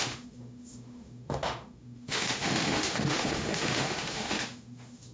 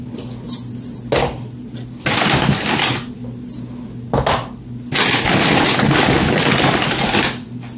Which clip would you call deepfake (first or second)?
first